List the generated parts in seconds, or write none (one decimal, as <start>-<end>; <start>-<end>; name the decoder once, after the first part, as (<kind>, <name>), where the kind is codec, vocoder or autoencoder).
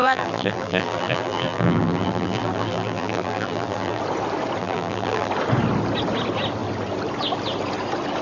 0.0-4.0 (vocoder, BigVGAN v2); 4.6-5.3